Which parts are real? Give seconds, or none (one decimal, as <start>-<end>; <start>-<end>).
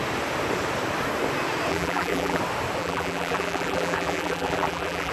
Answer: 0.0-1.7; 2.4-2.8